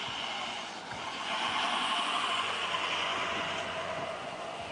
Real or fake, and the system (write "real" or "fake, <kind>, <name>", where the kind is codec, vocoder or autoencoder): fake, vocoder, Vocos